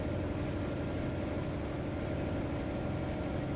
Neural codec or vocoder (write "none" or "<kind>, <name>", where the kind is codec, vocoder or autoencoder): none